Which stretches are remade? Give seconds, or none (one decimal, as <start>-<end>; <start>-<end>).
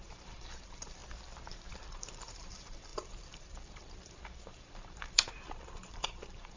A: 0.0-1.0; 1.7-6.6